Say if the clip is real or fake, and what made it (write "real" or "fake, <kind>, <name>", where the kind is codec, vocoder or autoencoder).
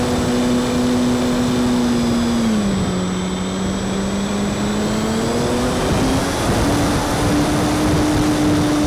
real